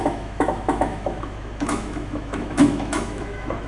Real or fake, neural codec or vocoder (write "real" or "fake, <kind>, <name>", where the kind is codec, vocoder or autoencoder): fake, autoencoder, DAC-VAE